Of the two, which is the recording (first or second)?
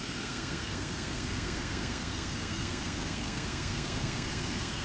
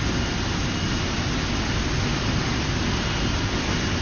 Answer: second